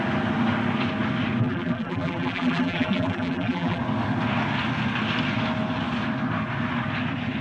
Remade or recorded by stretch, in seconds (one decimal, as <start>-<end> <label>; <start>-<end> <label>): 0.0-1.4 recorded; 1.4-3.8 remade; 3.8-7.4 recorded